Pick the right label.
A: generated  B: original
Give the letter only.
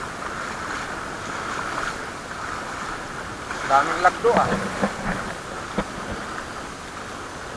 B